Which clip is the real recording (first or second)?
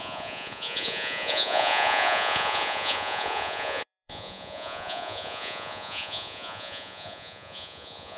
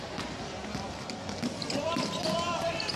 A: second